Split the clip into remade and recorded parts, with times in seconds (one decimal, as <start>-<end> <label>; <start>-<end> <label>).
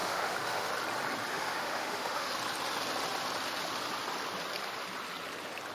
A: 0.0-0.7 remade; 0.7-1.3 recorded; 1.3-2.3 remade; 2.3-5.7 recorded